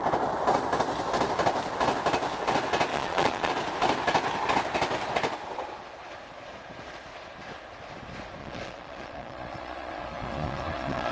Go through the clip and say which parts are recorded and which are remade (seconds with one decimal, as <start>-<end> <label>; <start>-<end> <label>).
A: 0.0-2.9 recorded; 2.9-3.5 remade; 3.5-8.4 recorded; 8.4-11.1 remade

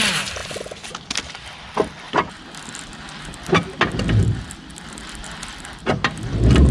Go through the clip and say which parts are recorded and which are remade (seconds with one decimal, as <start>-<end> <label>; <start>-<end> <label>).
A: 0.0-6.7 recorded

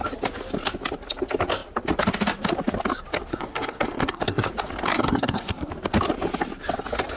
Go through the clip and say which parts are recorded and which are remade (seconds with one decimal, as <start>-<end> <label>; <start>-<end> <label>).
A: 0.0-3.3 recorded; 3.3-4.5 remade; 4.5-4.9 recorded; 4.9-5.7 remade; 5.7-7.2 recorded

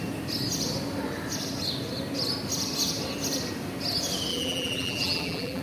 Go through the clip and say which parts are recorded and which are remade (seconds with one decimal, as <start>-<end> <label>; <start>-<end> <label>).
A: 0.0-4.3 recorded; 4.3-5.6 remade

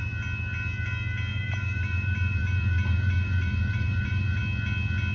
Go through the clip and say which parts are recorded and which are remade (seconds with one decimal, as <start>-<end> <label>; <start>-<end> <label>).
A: 0.0-1.3 recorded; 1.3-4.4 remade; 4.4-5.1 recorded

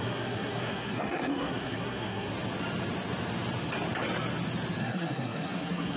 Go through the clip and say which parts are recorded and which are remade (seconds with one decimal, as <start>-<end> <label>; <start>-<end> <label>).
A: 0.0-2.3 remade; 2.3-4.8 recorded; 4.8-6.0 remade